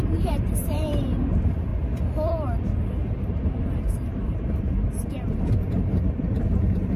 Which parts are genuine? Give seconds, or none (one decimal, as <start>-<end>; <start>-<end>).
1.7-3.3